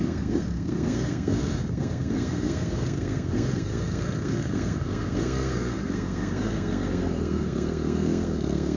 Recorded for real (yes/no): no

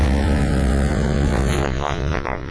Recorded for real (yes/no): no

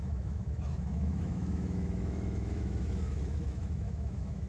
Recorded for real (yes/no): no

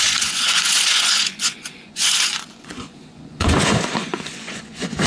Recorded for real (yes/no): no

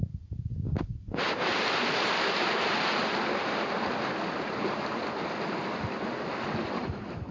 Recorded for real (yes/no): yes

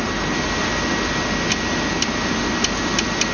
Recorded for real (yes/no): yes